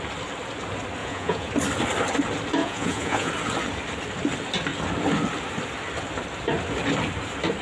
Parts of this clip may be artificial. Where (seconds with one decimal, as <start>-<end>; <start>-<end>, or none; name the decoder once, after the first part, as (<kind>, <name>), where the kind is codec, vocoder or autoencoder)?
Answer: 1.0-1.5 (vocoder, Vocos); 2.6-3.3